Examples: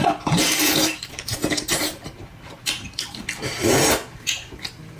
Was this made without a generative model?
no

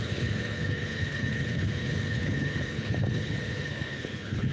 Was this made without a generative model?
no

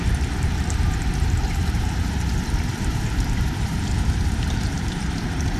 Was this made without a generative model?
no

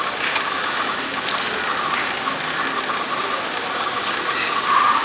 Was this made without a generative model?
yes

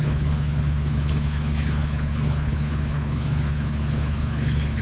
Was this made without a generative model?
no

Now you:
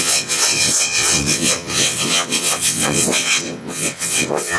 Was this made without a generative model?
no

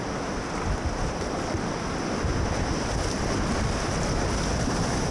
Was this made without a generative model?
yes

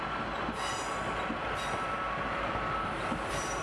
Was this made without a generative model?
yes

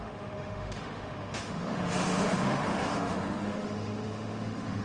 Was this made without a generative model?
no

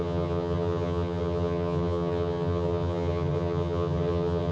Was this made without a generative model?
no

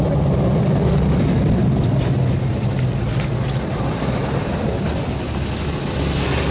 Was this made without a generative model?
yes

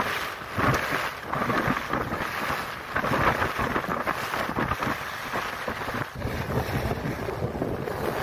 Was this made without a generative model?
yes